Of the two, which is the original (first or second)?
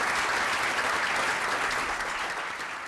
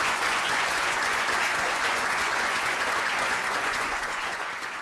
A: first